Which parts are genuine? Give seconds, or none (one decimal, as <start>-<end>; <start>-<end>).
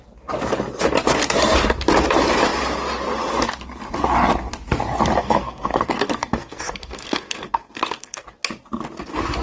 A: 0.0-5.2; 8.4-9.4